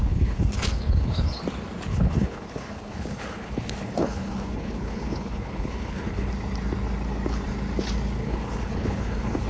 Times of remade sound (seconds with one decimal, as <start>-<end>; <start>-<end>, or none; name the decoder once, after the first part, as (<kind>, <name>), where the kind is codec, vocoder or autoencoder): 0.0-1.4 (codec, HILCodec); 1.9-6.3; 8.2-9.5